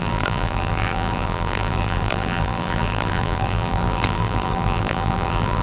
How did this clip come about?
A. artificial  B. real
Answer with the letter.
A